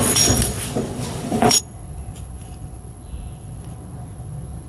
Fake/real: fake